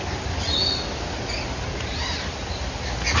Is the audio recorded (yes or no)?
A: yes